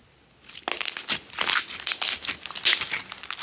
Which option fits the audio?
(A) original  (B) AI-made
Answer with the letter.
A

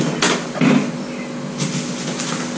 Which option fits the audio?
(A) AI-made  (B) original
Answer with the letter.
B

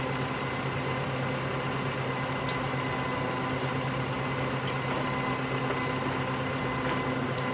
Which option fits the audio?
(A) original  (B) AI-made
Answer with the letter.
A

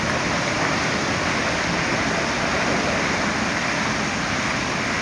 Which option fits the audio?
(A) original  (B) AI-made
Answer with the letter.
A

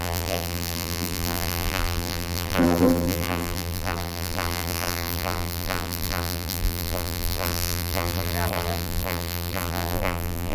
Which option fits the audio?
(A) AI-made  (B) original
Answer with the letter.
A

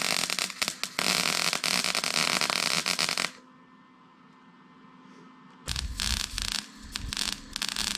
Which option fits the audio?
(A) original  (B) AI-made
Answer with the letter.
A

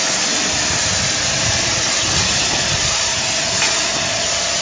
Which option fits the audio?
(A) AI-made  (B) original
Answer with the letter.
B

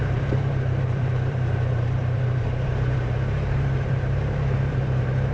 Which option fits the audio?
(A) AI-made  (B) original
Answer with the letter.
A